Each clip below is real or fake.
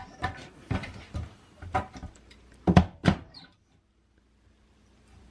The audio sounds fake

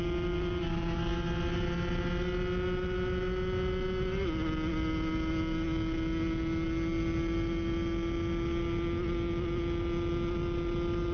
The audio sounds real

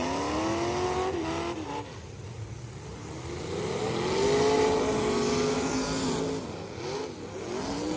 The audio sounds real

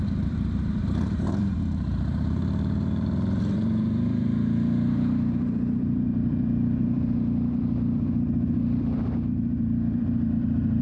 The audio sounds fake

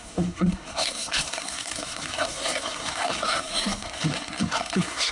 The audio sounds fake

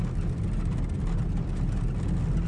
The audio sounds real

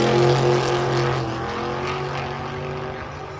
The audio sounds real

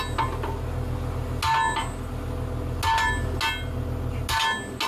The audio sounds real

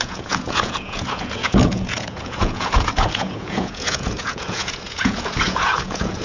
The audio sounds fake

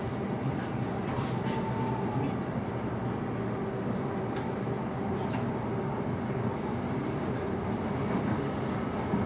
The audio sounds real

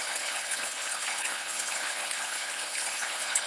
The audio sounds fake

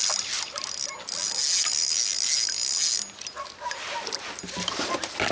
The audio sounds real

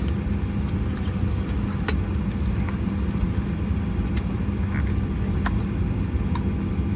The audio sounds real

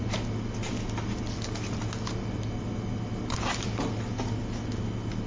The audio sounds real